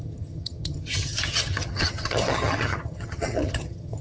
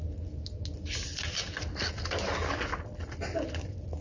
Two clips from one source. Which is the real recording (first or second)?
second